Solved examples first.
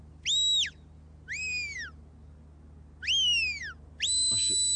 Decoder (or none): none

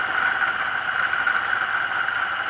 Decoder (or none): none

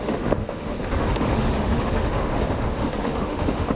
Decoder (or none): autoencoder, DAC-VAE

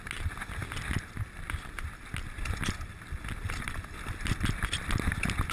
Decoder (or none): none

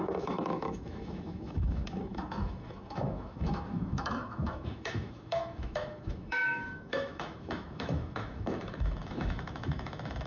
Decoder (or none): autoencoder, DAC-VAE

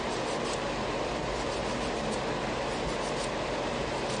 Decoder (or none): none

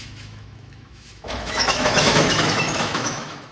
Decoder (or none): autoencoder, DAC-VAE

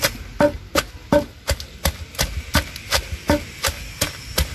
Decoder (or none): none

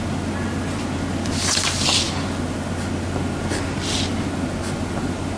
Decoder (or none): none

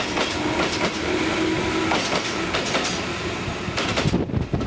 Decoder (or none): none